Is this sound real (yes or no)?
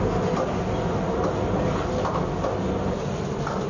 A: yes